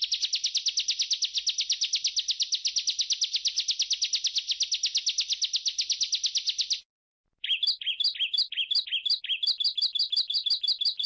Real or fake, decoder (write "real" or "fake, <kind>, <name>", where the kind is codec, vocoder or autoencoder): real